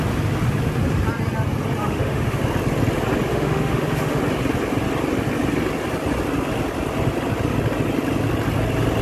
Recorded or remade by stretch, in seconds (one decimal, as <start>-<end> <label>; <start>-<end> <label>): 0.0-1.8 recorded; 1.8-2.4 remade; 2.4-3.3 recorded; 3.3-4.2 remade; 4.2-9.0 recorded